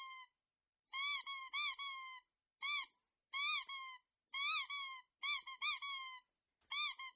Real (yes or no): yes